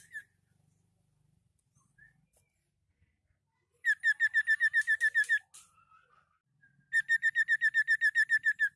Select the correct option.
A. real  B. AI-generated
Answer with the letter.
A